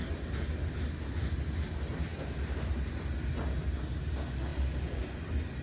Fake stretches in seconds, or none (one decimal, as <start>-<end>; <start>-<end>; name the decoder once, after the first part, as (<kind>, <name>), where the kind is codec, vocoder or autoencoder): 2.1-2.7 (vocoder, BigVGAN v2); 4.5-5.0